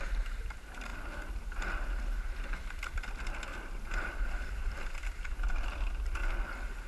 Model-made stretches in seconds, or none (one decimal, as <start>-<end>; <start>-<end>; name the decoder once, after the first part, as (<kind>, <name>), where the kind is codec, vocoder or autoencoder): 0.0-0.9 (vocoder, BigVGAN v2); 2.2-3.5; 4.1-6.2